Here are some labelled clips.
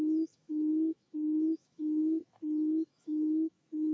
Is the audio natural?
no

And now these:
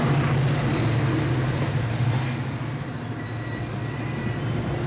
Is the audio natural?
yes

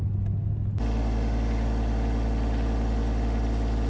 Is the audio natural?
yes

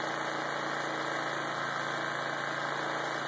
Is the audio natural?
yes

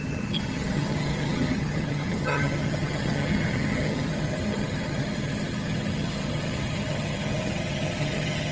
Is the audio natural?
no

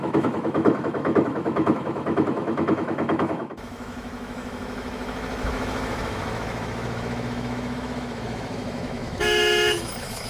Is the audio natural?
no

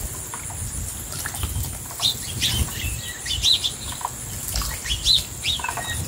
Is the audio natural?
yes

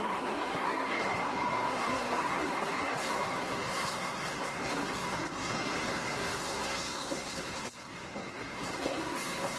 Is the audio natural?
no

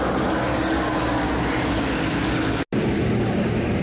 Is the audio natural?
yes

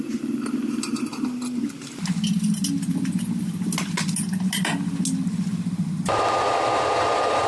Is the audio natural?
yes